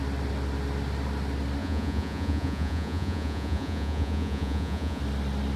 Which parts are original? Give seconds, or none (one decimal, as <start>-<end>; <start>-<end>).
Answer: 0.0-1.6; 5.0-5.6